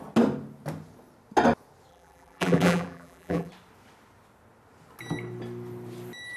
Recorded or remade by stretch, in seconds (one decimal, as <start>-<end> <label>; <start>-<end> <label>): 0.0-1.9 recorded; 1.9-3.5 remade; 3.5-6.4 recorded